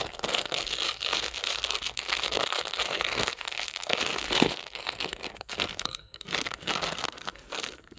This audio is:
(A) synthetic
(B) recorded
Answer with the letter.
A